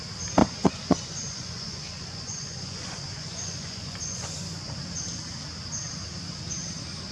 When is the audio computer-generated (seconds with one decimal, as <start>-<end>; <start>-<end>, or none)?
0.4-4.7